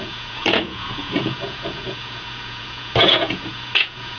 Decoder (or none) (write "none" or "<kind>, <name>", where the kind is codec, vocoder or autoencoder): vocoder, Vocos